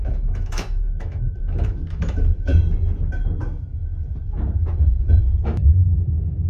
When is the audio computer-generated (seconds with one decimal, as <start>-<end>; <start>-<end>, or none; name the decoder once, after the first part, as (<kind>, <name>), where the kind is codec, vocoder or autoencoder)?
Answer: 0.0-2.5 (autoencoder, DAC-VAE); 3.4-3.8; 5.2-6.5